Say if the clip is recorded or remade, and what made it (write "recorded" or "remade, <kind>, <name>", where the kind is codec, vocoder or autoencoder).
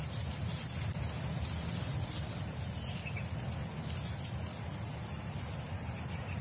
recorded